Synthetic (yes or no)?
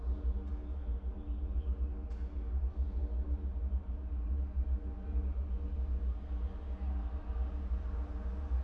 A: no